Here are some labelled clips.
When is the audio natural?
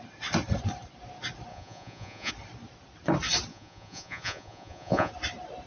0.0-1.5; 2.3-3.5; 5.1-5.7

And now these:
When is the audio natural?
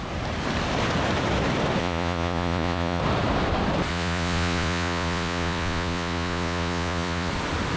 0.0-1.8; 3.0-3.9; 7.3-7.8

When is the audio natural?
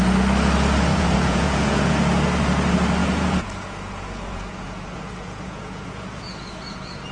0.0-0.9; 1.9-3.0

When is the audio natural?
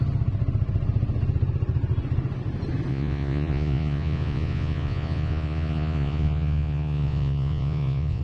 0.0-2.9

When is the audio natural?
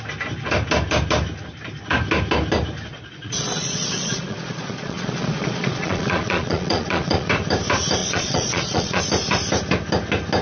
0.0-2.9; 7.3-8.0; 9.0-10.4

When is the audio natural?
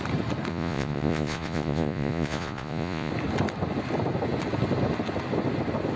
0.0-0.5; 3.1-6.0